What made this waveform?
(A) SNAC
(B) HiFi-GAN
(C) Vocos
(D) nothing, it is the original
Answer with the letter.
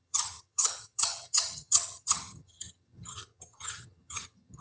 B